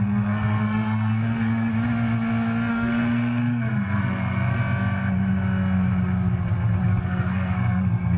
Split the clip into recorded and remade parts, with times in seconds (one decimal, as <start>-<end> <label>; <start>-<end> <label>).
0.0-1.7 remade; 1.7-2.7 recorded; 2.7-4.6 remade; 4.6-7.0 recorded; 7.0-8.2 remade